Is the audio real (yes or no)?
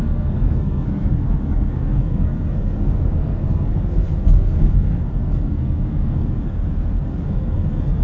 no